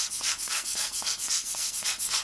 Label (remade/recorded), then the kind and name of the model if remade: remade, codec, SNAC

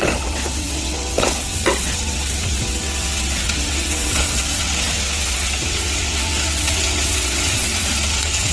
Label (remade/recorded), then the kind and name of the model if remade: remade, vocoder, WaveNeXt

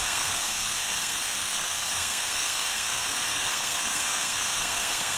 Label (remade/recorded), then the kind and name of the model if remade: remade, codec, SNAC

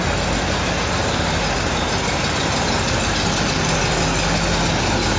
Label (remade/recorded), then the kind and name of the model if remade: recorded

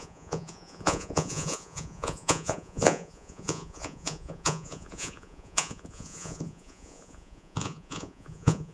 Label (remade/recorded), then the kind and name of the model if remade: remade, vocoder, Vocos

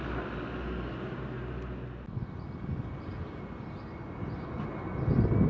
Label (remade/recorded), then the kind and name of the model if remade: recorded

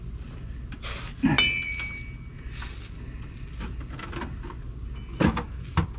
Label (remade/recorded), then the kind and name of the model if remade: recorded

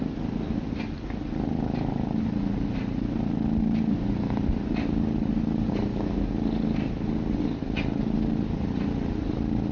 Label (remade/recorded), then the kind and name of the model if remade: recorded